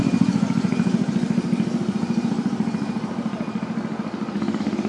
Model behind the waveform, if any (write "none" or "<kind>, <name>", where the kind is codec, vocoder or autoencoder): none